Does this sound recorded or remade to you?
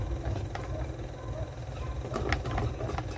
recorded